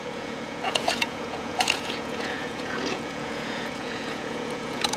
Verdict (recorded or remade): remade